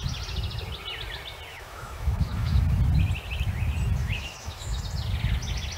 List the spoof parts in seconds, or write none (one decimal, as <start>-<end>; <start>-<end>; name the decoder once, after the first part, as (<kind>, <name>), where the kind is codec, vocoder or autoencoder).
1.5-2.6 (autoencoder, DAC-VAE); 4.0-4.8